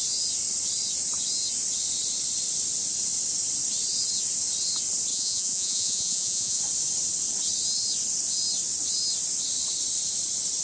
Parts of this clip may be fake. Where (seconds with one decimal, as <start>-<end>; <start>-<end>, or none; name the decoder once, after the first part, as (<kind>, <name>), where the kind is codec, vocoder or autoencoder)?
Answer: 5.1-6.6 (vocoder, Vocos)

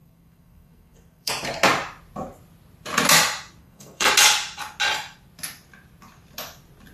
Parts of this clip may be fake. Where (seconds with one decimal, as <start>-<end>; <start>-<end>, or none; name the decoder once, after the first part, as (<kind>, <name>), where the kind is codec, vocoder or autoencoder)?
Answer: 0.0-1.3 (codec, SNAC); 3.6-4.1

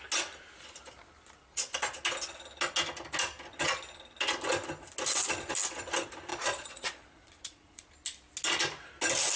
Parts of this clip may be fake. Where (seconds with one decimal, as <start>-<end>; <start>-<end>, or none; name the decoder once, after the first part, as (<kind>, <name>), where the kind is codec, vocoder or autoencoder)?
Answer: 6.3-7.9 (vocoder, Vocos)

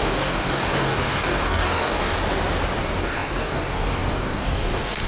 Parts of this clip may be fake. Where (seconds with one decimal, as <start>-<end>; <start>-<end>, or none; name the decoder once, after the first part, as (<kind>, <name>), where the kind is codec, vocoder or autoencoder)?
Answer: 0.0-2.2 (codec, DAC); 2.8-5.1